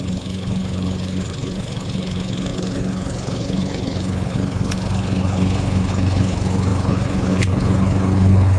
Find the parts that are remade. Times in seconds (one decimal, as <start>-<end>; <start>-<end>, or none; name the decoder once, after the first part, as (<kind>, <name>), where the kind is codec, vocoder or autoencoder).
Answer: 0.0-8.6 (codec, HILCodec)